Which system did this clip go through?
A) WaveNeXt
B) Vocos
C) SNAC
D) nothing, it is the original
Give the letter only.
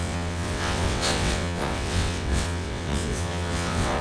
A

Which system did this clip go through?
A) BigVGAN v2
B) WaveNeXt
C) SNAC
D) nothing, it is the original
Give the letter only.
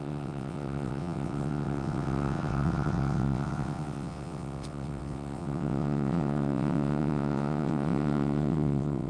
B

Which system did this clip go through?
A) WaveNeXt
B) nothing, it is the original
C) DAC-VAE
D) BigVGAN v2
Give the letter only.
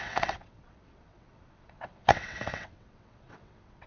A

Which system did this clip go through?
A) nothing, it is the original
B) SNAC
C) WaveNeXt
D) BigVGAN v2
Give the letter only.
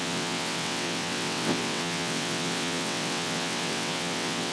C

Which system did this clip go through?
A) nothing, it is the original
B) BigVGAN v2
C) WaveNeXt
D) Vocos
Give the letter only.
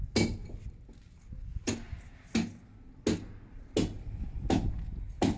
A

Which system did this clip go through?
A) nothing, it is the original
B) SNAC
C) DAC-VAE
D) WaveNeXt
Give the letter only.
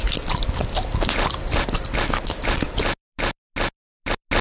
A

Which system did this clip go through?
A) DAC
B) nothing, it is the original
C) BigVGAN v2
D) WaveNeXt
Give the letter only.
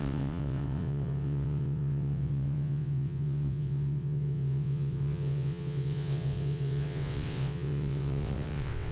D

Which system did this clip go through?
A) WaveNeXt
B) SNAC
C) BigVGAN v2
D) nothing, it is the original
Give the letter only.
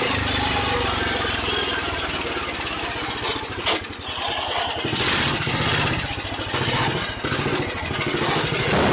D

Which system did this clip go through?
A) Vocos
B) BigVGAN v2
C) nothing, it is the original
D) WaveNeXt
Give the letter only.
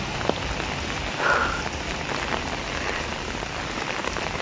C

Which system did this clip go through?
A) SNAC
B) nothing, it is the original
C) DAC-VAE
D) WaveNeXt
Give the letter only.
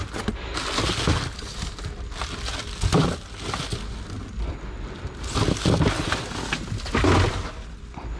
B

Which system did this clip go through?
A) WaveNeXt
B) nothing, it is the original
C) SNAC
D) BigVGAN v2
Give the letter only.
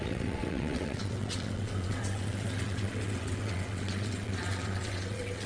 A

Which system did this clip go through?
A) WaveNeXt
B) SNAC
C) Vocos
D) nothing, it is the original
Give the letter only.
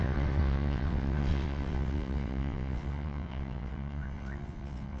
A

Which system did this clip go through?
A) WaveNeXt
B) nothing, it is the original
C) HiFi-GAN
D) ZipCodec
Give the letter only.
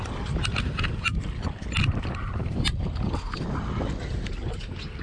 B